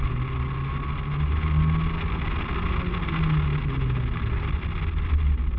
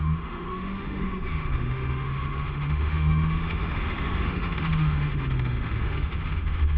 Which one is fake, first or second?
second